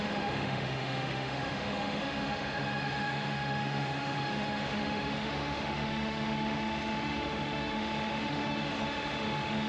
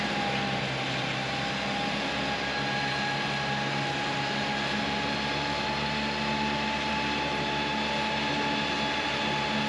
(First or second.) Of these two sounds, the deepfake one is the first